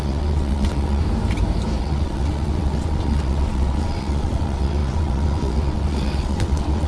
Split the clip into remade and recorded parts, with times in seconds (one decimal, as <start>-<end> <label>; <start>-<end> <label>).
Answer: 0.0-1.0 remade; 1.0-1.8 recorded; 1.8-6.9 remade